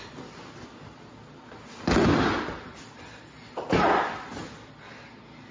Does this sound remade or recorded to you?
recorded